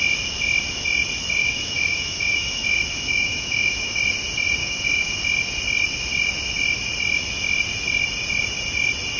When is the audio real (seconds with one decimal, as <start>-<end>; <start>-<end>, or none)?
0.0-1.4; 4.0-4.6; 5.1-9.2